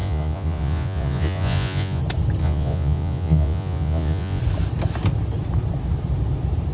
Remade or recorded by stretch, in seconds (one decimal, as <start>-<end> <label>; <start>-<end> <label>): 0.0-2.0 remade; 2.0-2.4 recorded; 2.4-4.4 remade; 4.4-6.7 recorded